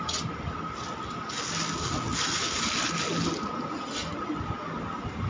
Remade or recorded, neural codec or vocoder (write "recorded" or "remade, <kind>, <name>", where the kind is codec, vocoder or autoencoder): recorded